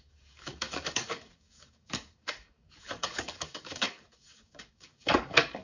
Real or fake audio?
fake